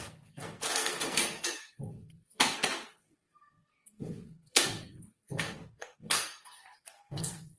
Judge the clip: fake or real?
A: fake